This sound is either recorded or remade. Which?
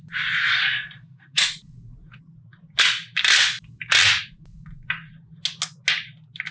recorded